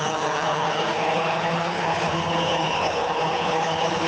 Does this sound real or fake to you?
fake